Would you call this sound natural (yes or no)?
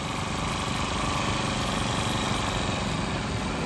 yes